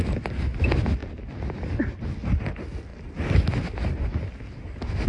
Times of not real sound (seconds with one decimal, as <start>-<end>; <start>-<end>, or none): 1.0-1.6; 2.9-3.7